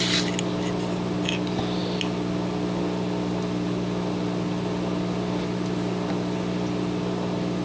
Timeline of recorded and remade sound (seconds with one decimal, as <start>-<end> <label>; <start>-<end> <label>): 0.0-7.6 recorded

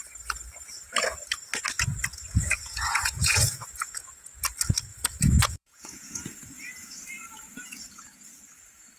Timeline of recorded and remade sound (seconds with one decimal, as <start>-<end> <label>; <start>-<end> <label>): 0.0-2.1 recorded; 2.1-4.4 remade; 4.4-4.9 recorded; 4.9-8.4 remade; 8.4-9.0 recorded